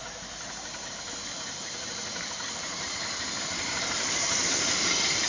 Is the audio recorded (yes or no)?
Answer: yes